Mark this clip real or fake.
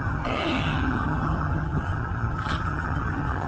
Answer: fake